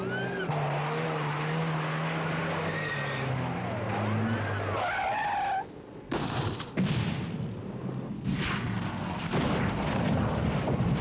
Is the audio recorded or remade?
recorded